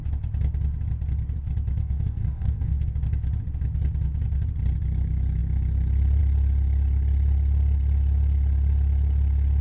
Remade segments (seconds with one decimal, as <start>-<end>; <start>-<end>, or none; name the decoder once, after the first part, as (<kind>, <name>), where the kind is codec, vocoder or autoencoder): 1.8-2.9 (codec, SNAC)